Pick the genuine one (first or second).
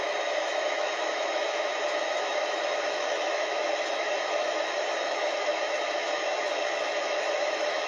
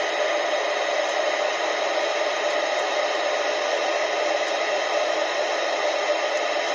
second